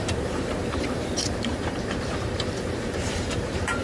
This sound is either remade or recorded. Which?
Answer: remade